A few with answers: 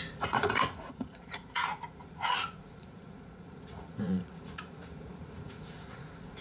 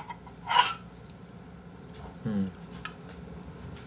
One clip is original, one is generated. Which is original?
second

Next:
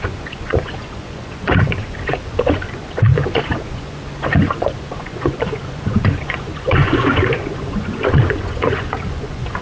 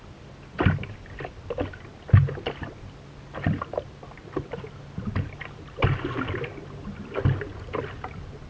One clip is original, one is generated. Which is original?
second